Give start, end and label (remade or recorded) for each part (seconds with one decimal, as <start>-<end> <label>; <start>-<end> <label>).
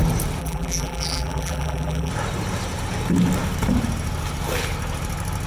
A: 0.0-0.4 recorded; 0.4-2.1 remade; 2.1-5.5 recorded